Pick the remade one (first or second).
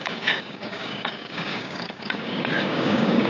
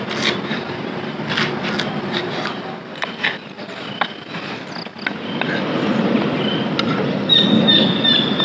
first